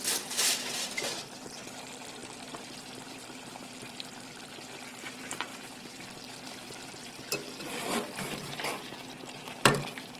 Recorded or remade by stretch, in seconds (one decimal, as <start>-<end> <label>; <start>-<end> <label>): 0.0-10.2 remade